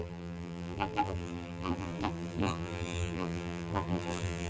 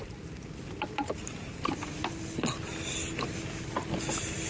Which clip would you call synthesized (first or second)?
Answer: first